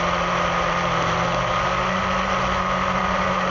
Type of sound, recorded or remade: recorded